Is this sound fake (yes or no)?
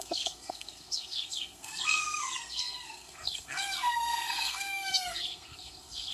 yes